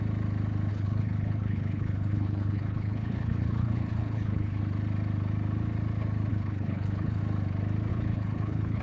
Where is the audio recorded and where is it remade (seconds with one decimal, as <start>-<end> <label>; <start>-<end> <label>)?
0.0-0.7 recorded; 0.7-4.6 remade; 4.6-6.3 recorded; 6.3-7.2 remade; 7.2-7.9 recorded; 7.9-8.8 remade